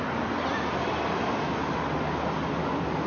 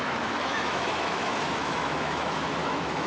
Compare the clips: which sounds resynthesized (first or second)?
second